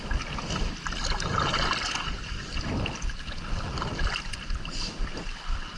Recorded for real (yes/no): yes